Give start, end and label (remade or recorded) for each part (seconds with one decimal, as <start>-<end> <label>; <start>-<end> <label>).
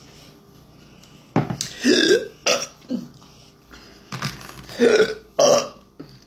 0.0-6.3 recorded